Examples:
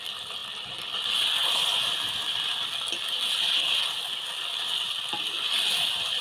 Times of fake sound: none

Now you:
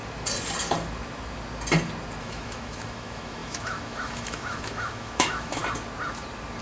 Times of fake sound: 2.2-5.6 (autoencoder, DAC-VAE)

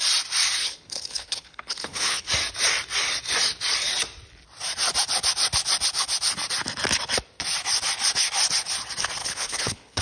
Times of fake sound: 0.6-2.3 (codec, HILCodec); 9.2-10.0

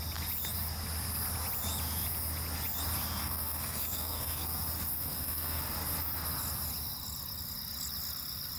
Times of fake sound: 3.2-4.6 (codec, SNAC); 5.0-5.6

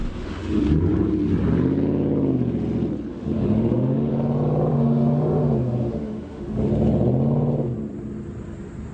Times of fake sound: 0.0-0.6 (autoencoder, DAC-VAE); 3.1-4.1; 4.7-6.7

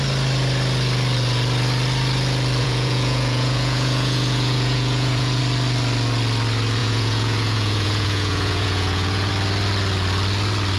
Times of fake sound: 2.6-5.4 (vocoder, Vocos); 6.8-9.3

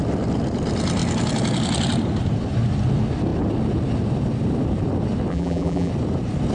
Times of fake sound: 5.3-5.9 (vocoder, BigVGAN v2)

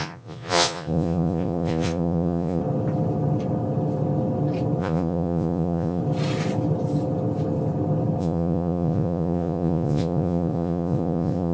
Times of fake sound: 0.0-2.6 (vocoder, Vocos); 4.8-6.0; 8.2-11.5